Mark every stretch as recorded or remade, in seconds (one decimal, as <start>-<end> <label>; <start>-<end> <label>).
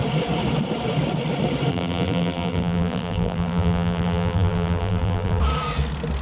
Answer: 0.0-1.7 recorded; 1.7-5.4 remade; 5.4-6.2 recorded